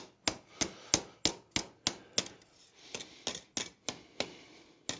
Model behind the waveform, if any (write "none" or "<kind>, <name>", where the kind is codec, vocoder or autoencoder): none